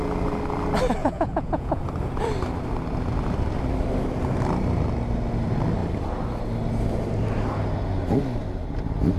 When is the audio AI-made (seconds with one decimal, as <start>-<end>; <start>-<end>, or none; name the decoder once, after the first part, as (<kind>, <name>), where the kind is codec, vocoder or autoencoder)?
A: 1.0-1.8 (vocoder, Vocos)